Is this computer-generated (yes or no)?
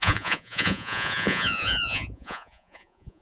yes